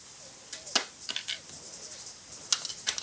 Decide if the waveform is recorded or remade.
recorded